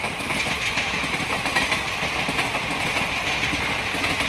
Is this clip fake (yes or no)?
no